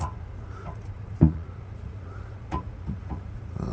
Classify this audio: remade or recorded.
remade